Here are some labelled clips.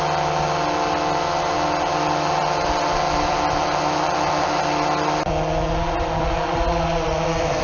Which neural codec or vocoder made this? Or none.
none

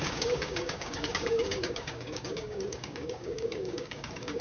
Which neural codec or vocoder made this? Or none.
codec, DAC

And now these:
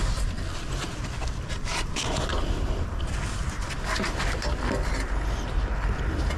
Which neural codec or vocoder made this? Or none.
none